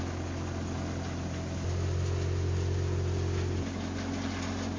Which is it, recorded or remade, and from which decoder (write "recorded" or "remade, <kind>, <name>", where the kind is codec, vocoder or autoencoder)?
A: recorded